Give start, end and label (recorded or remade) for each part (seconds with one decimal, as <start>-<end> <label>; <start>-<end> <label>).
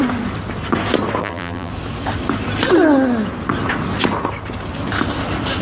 0.0-1.2 recorded; 1.2-1.7 remade; 1.7-5.6 recorded